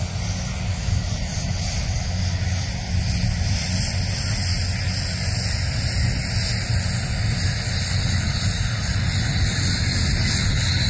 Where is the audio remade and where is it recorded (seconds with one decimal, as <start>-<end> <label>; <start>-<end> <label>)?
0.0-10.9 recorded